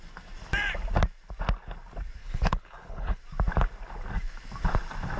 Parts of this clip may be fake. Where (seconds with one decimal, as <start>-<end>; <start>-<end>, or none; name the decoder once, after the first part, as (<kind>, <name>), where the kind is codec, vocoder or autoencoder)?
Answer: 2.2-3.2 (codec, HILCodec)